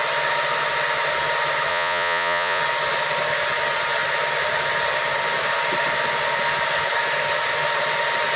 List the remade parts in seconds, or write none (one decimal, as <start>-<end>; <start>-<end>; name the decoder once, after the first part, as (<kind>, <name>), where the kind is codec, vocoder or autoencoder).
1.7-2.6 (vocoder, Vocos)